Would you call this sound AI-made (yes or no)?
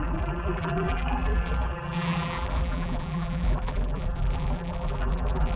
yes